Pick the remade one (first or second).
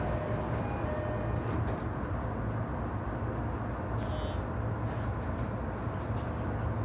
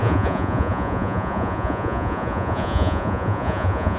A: second